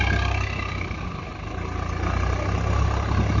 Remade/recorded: recorded